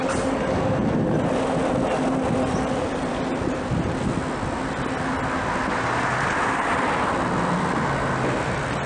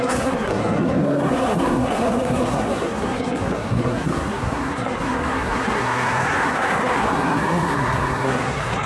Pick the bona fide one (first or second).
first